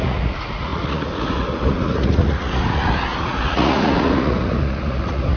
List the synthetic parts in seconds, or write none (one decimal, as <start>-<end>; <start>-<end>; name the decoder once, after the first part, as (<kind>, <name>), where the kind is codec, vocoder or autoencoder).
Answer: 0.0-5.4 (vocoder, Vocos)